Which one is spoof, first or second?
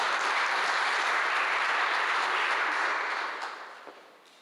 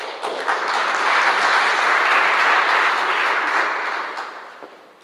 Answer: first